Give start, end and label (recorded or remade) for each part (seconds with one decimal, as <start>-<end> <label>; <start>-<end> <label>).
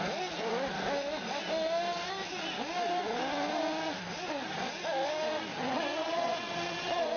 0.0-5.5 recorded; 5.5-7.2 remade